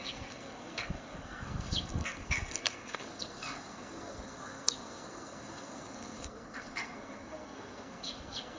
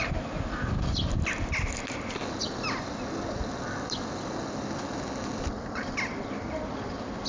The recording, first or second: second